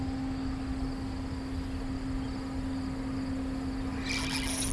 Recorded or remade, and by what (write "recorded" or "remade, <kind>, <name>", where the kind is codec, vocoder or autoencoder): recorded